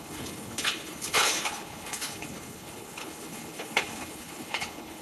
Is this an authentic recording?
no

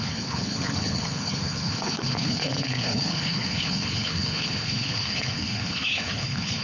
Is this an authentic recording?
no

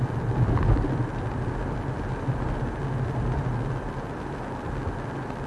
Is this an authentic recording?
yes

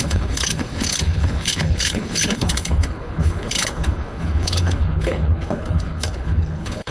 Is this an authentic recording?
no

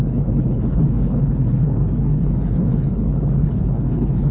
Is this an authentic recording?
no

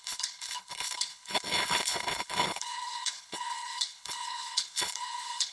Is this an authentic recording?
no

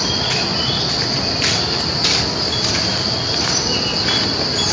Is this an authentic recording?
yes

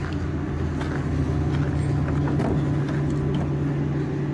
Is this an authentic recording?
yes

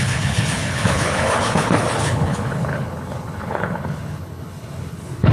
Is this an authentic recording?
no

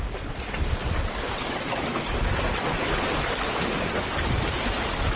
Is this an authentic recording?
yes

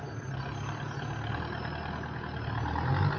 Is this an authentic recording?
yes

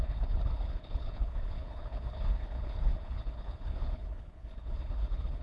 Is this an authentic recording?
no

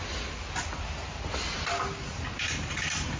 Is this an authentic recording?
yes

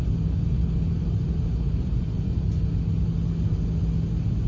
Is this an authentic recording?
yes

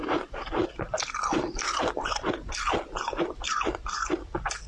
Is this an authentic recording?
yes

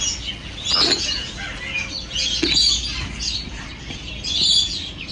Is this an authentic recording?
yes